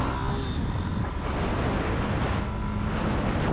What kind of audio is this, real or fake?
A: real